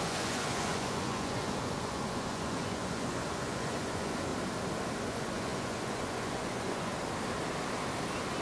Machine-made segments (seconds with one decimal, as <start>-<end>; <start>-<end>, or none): 0.0-4.3; 5.0-6.9